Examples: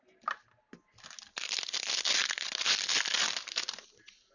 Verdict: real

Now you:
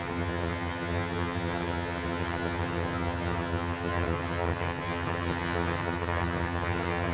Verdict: fake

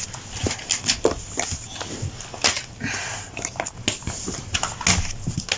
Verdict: real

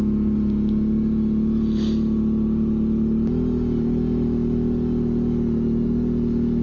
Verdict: real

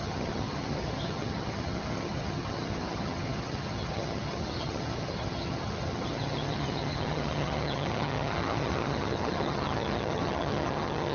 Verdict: fake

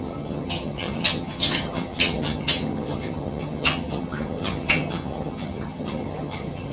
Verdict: fake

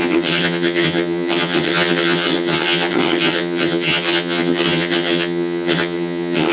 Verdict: fake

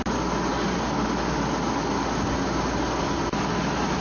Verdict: real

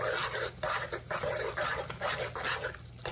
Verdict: real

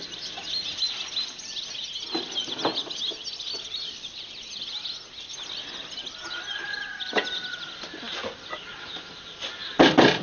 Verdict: real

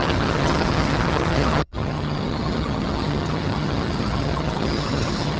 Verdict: fake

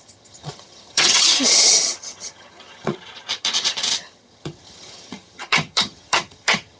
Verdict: fake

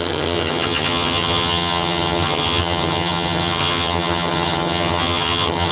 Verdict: fake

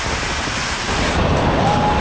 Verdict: real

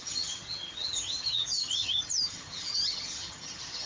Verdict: fake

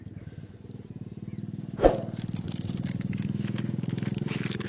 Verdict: real